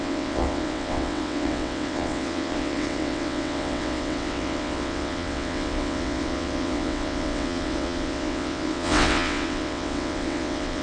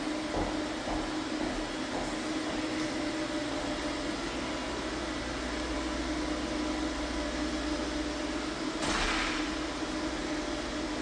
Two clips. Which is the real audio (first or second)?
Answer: second